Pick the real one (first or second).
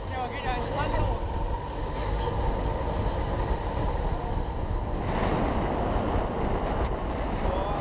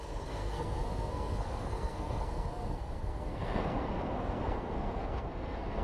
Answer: first